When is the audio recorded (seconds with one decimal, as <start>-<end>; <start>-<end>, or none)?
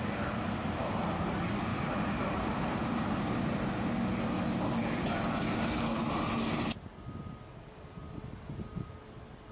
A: 0.0-1.7; 3.6-9.5